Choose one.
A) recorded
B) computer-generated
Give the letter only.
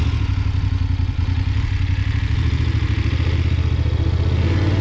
A